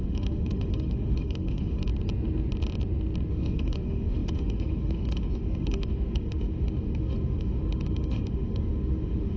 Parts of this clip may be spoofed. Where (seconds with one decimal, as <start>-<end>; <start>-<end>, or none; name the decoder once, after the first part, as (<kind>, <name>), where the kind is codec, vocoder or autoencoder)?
0.0-1.9 (autoencoder, DAC-VAE); 3.3-9.4